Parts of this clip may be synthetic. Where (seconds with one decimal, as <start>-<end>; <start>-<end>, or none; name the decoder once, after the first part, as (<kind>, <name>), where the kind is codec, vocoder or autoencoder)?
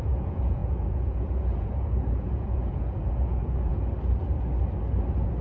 0.0-3.7 (vocoder, Vocos)